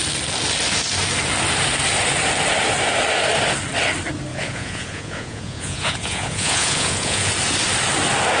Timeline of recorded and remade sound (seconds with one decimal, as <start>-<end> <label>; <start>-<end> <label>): 0.0-4.3 recorded; 4.3-7.3 remade; 7.3-8.4 recorded